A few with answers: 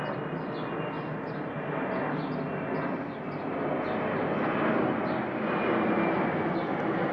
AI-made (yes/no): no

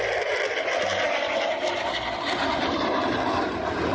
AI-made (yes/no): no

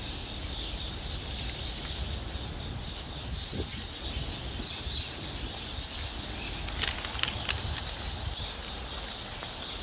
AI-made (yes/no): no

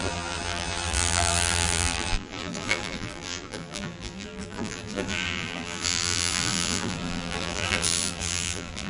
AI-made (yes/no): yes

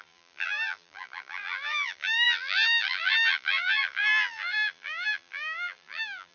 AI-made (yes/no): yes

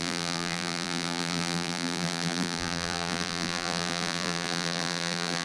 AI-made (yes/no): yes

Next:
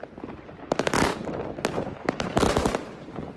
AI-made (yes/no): yes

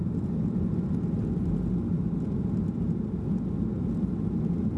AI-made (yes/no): no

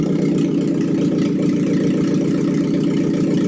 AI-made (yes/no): no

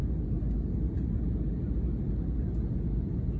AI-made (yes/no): no